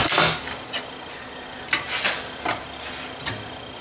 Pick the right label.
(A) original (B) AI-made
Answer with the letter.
A